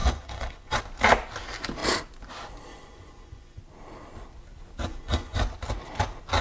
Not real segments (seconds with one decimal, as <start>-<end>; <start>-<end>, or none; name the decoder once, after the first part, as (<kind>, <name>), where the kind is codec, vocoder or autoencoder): 0.0-0.8 (vocoder, Vocos); 2.7-3.6; 4.9-5.4